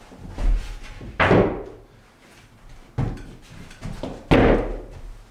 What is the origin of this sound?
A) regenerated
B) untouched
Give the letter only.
B